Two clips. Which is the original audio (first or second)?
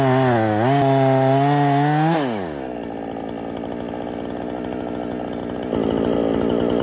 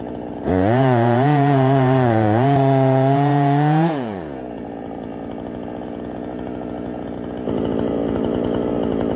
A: first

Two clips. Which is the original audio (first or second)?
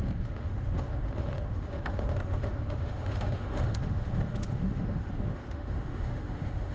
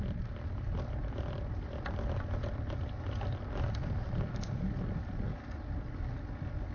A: second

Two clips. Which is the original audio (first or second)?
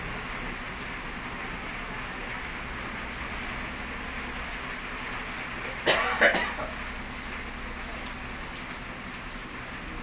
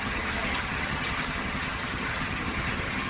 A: first